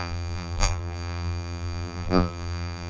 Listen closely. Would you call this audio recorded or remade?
remade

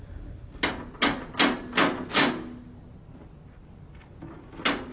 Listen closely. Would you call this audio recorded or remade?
recorded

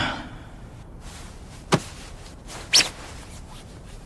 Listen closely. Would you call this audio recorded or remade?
recorded